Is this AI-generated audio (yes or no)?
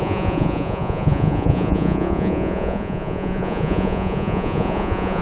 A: yes